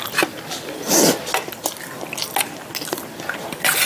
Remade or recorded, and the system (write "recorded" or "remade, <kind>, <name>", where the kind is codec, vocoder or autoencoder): recorded